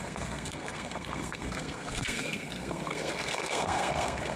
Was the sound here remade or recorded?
remade